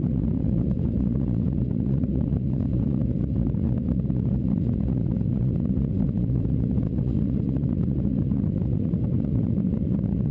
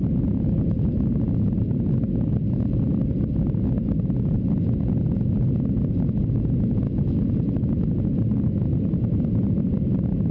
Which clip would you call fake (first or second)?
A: first